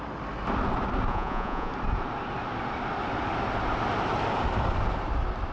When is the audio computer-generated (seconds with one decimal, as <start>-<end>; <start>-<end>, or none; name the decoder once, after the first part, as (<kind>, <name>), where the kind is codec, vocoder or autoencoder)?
1.1-1.7 (vocoder, Vocos)